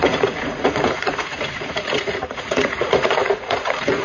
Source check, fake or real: fake